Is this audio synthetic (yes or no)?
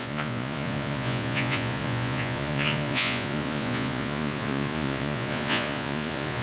yes